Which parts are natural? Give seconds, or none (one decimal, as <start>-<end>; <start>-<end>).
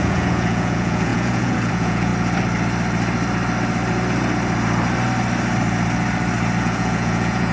2.1-6.6